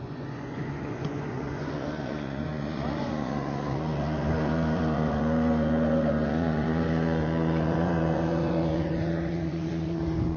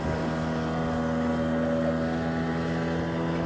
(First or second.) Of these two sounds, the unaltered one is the second